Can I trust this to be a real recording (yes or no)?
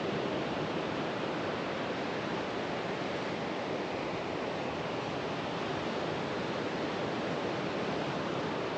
yes